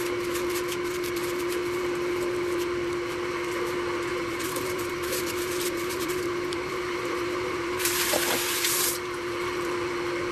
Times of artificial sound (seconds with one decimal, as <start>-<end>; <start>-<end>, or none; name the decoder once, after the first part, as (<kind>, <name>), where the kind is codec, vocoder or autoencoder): 4.1-8.6 (vocoder, BigVGAN v2)